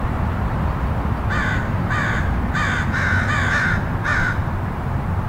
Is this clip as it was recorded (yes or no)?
yes